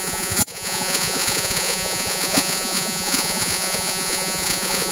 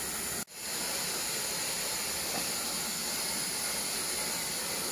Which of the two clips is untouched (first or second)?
second